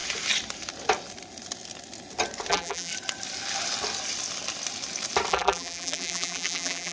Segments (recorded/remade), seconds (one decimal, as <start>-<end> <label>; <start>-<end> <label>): 0.0-2.5 recorded; 2.5-2.9 remade; 2.9-5.3 recorded; 5.3-6.9 remade